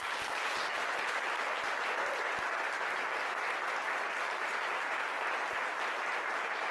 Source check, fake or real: real